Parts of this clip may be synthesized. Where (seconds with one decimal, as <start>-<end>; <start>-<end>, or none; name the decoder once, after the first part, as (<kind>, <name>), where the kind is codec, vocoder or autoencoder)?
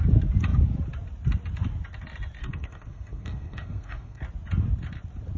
2.4-4.2 (codec, SNAC)